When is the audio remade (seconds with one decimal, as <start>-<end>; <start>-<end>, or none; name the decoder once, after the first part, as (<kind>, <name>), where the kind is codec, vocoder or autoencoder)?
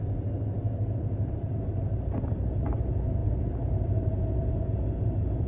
3.2-4.5 (vocoder, BigVGAN v2)